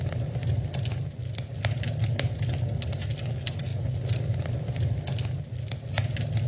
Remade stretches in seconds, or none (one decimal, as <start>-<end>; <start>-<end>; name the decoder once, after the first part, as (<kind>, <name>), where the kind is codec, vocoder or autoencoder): none